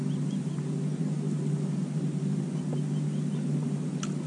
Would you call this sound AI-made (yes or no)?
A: no